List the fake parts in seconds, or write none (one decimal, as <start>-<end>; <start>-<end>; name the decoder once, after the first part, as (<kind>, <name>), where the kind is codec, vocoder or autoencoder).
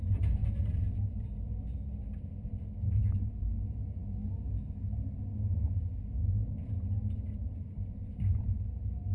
7.4-8.4 (vocoder, BigVGAN v2)